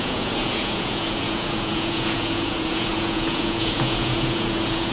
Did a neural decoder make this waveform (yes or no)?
yes